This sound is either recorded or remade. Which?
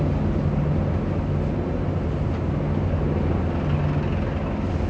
recorded